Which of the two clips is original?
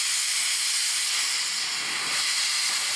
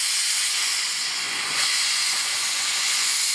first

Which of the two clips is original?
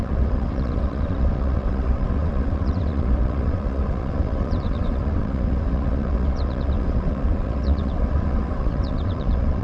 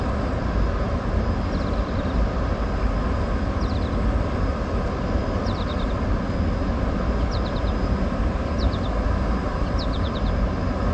second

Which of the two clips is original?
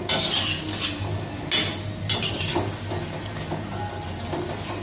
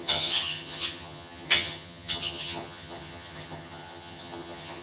first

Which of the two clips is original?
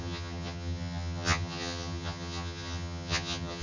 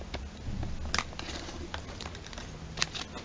second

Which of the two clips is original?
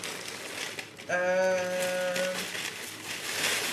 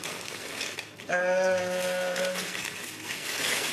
first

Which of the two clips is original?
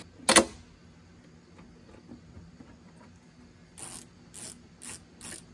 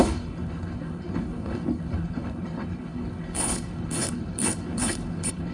first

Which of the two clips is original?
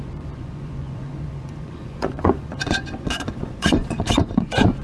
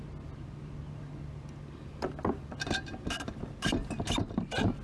second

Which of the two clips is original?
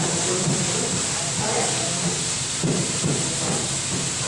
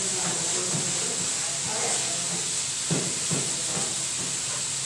second